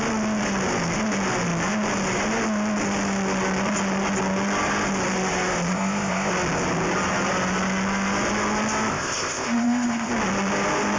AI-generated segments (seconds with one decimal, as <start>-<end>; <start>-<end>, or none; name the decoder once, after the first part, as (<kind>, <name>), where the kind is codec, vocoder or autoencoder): 5.7-6.3 (codec, ZipCodec); 8.9-10.1